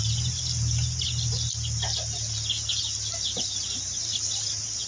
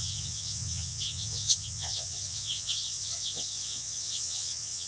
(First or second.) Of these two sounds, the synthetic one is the second